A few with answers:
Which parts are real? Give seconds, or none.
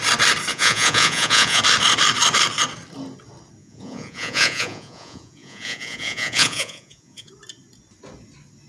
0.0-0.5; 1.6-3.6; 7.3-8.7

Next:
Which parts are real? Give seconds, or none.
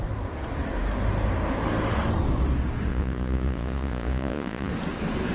0.0-2.9; 4.7-5.3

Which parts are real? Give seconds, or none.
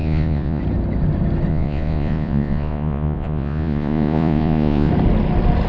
0.6-1.5; 4.9-5.7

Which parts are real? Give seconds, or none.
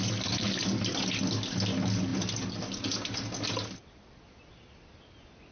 0.0-5.5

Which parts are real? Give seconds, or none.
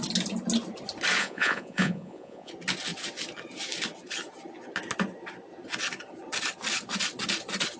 0.0-1.2; 2.5-7.8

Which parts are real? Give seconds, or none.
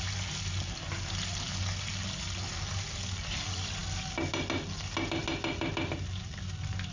0.0-6.9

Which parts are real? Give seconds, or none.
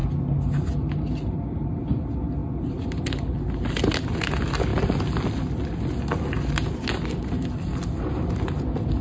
0.0-9.0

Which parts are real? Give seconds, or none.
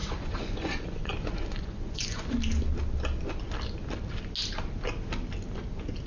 2.4-6.1